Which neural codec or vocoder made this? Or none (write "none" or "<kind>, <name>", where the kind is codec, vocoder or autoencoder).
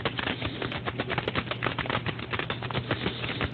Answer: none